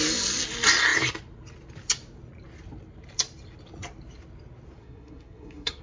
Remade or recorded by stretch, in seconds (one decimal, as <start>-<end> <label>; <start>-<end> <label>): 0.0-4.8 recorded; 4.8-5.8 remade